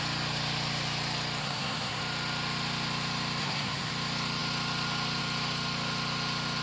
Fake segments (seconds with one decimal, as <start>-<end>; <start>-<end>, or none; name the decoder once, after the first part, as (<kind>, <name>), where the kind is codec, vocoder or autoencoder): 1.4-2.0 (codec, SNAC); 3.4-3.9